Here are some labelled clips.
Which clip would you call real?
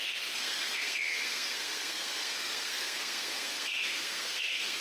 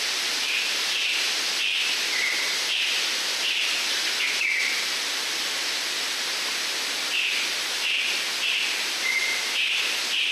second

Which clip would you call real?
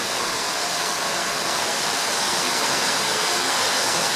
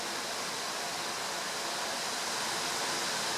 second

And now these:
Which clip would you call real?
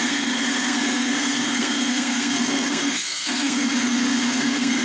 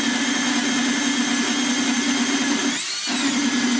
second